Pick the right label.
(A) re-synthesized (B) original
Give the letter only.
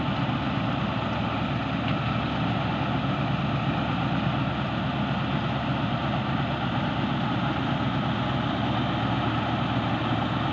B